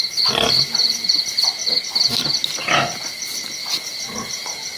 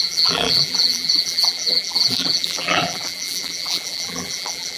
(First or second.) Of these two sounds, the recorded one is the first